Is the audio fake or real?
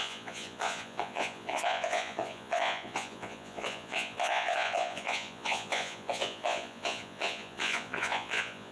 fake